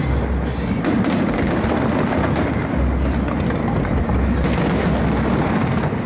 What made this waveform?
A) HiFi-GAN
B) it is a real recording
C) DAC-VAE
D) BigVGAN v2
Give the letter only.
B